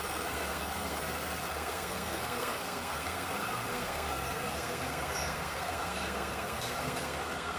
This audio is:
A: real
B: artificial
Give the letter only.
B